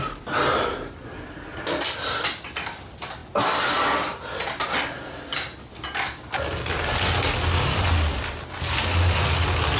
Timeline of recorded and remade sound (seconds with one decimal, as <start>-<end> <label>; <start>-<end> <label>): 0.0-9.8 recorded